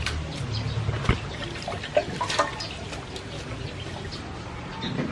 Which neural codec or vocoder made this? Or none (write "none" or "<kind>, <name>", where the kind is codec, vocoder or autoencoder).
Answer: none